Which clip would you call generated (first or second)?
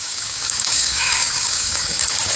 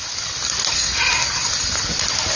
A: first